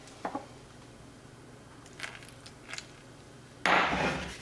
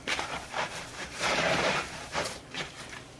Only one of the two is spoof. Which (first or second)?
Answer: second